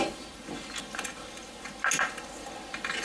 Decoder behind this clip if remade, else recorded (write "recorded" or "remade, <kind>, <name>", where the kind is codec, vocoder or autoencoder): recorded